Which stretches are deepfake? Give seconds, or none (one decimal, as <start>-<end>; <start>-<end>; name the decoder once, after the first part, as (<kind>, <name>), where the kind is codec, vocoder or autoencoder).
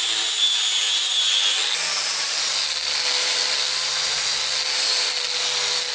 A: none